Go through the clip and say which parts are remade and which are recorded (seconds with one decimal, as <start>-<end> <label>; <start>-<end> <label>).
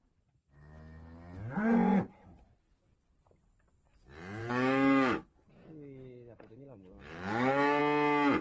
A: 0.0-4.4 recorded; 4.4-7.8 remade; 7.8-8.4 recorded